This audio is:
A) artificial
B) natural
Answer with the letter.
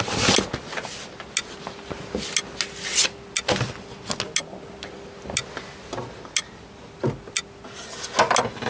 B